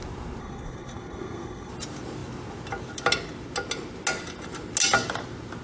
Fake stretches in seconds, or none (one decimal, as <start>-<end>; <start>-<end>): 0.4-1.7

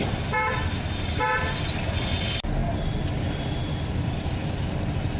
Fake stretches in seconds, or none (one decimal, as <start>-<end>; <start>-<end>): none

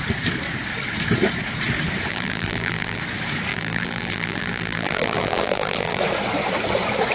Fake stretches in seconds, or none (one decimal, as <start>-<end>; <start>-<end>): 2.1-3.0; 3.5-6.0